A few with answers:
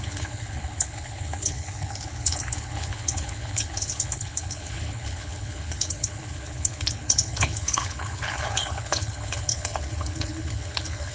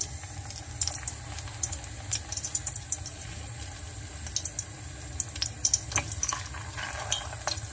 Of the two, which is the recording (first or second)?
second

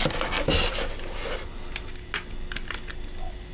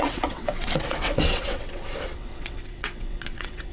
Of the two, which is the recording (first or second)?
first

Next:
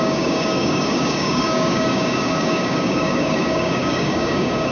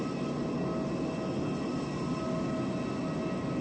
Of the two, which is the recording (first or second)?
second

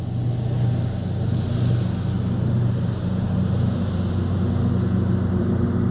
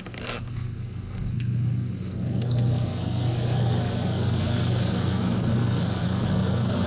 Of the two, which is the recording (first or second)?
first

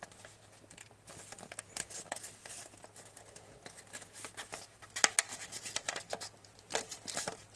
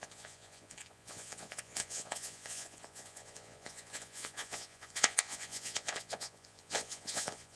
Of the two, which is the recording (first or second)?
first